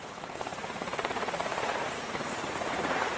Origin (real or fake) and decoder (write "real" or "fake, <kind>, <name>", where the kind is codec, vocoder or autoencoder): fake, vocoder, Vocos